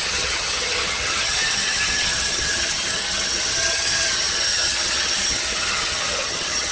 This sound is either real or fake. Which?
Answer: fake